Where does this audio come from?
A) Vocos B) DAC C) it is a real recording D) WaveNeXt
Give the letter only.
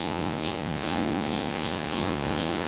A